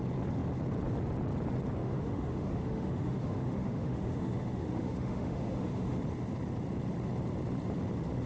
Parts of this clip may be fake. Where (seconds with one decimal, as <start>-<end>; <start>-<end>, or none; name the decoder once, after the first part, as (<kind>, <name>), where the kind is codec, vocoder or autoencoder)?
1.8-6.0 (autoencoder, DAC-VAE)